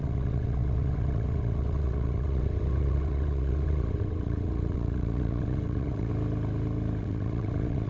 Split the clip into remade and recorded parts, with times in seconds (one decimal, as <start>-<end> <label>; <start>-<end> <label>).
0.0-6.1 remade; 6.1-7.0 recorded; 7.0-7.9 remade